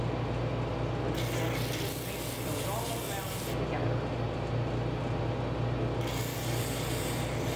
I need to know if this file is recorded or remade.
recorded